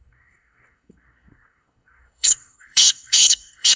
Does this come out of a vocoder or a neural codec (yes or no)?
yes